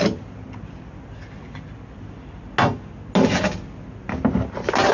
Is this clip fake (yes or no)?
no